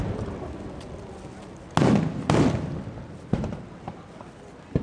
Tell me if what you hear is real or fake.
real